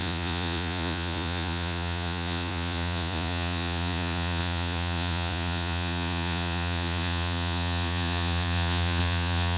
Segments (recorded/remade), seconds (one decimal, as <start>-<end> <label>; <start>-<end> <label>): 0.0-9.6 remade